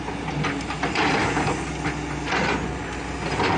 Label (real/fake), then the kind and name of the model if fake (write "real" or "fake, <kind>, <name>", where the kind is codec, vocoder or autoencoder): real